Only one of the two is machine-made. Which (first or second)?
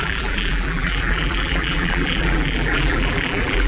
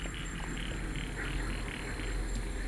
first